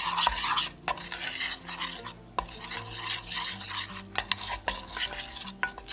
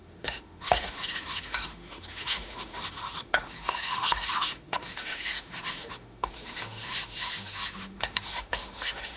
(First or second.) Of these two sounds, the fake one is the second